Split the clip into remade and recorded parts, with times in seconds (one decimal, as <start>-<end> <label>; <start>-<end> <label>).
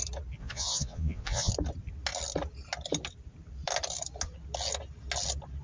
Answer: 0.0-0.4 recorded; 0.4-1.5 remade; 1.5-5.6 recorded